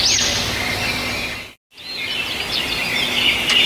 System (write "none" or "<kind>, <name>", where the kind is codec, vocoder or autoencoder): none